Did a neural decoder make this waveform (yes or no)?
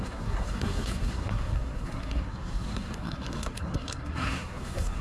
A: yes